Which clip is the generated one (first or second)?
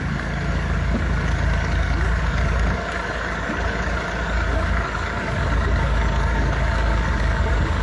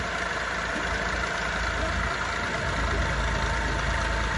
first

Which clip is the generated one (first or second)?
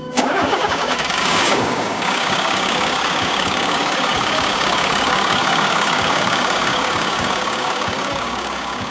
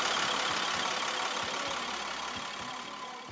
first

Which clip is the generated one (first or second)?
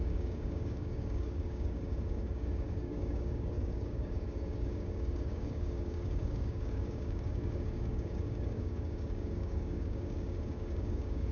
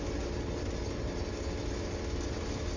first